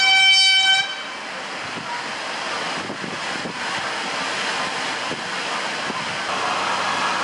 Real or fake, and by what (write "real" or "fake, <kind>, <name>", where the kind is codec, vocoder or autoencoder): real